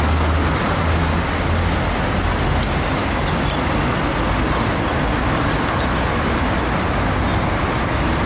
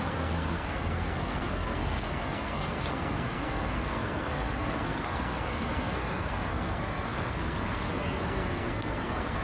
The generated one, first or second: second